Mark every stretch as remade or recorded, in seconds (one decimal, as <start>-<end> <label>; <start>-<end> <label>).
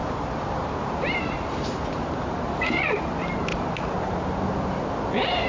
0.0-5.5 remade